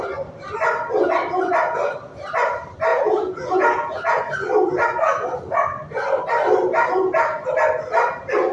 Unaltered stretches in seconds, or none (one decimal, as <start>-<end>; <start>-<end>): 0.0-2.9; 4.2-8.5